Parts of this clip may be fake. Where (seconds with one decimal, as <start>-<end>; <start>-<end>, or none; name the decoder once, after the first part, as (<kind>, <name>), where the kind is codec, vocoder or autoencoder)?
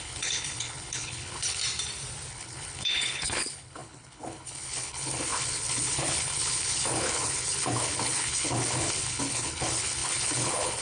0.0-1.6 (codec, HILCodec); 2.3-10.8